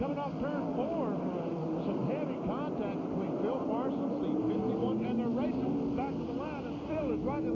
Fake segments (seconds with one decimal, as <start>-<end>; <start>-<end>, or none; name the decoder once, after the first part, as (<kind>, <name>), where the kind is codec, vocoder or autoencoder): none